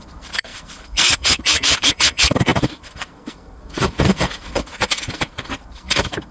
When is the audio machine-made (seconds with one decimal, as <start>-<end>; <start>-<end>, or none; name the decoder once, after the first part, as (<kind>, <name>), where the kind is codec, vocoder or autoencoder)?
0.0-6.3 (codec, SNAC)